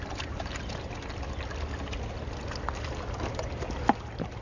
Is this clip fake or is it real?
real